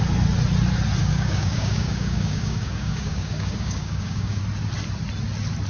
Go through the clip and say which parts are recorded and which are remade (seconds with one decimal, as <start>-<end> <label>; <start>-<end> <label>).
0.0-1.0 recorded; 1.0-4.4 remade; 4.4-5.7 recorded

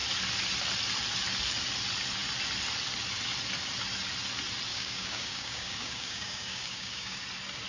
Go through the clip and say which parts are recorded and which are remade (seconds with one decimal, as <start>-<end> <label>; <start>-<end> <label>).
0.0-4.7 recorded; 4.7-7.2 remade; 7.2-7.7 recorded

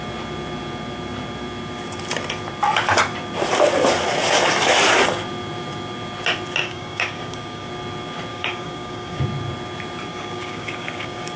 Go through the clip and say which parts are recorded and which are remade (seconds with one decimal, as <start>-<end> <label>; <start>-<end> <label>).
0.0-6.6 recorded; 6.6-7.7 remade; 7.7-8.3 recorded; 8.3-9.2 remade; 9.2-10.1 recorded; 10.1-11.4 remade

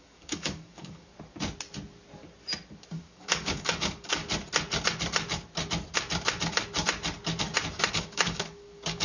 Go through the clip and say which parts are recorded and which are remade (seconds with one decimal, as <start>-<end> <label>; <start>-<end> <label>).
0.0-1.1 remade; 1.1-3.0 recorded; 3.0-4.2 remade; 4.2-7.9 recorded; 7.9-9.0 remade